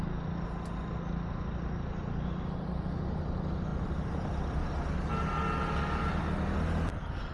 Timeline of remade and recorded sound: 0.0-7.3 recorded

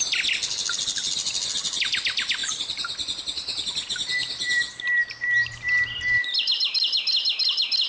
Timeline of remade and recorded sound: 0.0-7.9 recorded

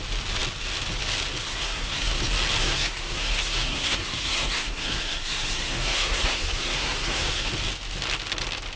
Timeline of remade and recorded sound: 0.0-1.4 recorded; 1.4-2.2 remade; 2.2-2.6 recorded; 2.6-7.5 remade; 7.5-8.8 recorded

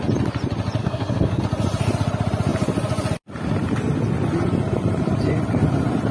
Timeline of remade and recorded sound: 0.0-0.8 recorded; 0.8-1.4 remade; 1.4-6.1 recorded

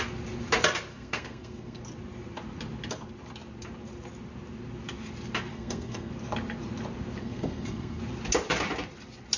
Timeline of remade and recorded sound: 0.0-0.9 recorded; 0.9-1.8 remade; 1.8-5.5 recorded; 5.5-6.1 remade; 6.1-7.2 recorded; 7.2-8.0 remade; 8.0-9.4 recorded

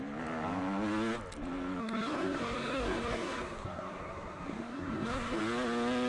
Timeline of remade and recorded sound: 0.0-1.8 recorded; 1.8-5.4 remade; 5.4-6.1 recorded

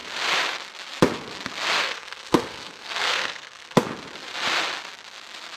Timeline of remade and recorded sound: 0.0-1.8 recorded; 1.8-3.9 remade; 3.9-5.6 recorded